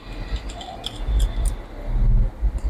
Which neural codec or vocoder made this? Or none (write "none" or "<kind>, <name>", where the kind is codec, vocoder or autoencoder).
none